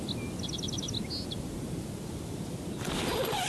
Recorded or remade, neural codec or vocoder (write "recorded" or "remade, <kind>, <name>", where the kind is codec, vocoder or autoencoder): recorded